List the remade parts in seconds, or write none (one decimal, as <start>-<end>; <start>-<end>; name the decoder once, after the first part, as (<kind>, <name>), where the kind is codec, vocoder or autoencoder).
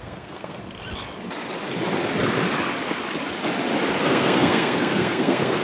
0.0-0.6 (codec, SNAC); 4.0-5.6